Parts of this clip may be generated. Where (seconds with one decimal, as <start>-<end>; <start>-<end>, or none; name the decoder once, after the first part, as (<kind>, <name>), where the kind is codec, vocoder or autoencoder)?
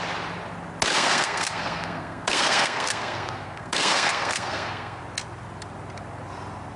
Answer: 0.9-5.0 (codec, SNAC)